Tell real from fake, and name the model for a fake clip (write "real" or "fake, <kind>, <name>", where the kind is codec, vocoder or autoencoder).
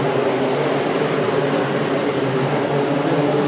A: real